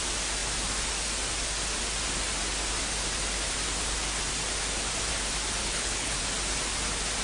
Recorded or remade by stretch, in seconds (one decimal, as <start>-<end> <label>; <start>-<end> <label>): 0.0-5.6 recorded; 5.6-6.2 remade; 6.2-7.2 recorded